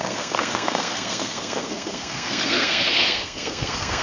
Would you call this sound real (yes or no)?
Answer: no